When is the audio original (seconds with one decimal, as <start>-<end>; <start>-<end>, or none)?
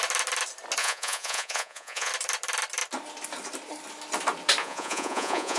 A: 0.0-0.8; 2.1-4.6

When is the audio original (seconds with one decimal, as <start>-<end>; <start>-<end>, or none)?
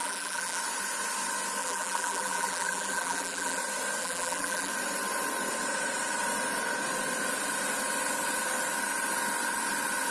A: 0.6-1.6; 3.6-4.0; 4.7-10.1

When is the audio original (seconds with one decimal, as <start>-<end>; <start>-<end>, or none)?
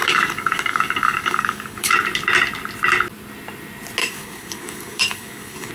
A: 1.9-4.0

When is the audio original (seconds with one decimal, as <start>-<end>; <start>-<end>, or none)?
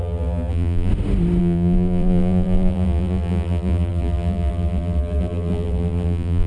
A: 0.9-1.4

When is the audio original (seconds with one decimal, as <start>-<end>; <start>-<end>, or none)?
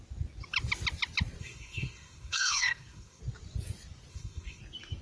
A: 0.0-1.4; 3.2-4.1; 4.6-5.0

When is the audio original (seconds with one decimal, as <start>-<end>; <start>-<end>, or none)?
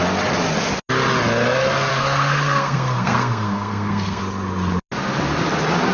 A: 0.0-1.9; 4.2-5.9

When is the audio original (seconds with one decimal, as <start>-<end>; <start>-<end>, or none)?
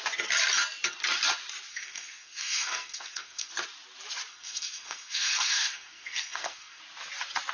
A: 0.0-1.7; 3.5-4.3; 6.8-7.5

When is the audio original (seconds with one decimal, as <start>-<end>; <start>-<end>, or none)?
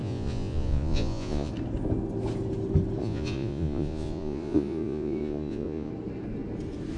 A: 1.5-3.0; 5.9-7.0